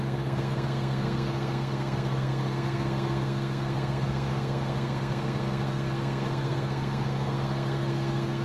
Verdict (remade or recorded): remade